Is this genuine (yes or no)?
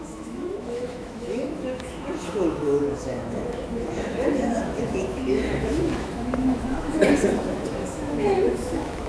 no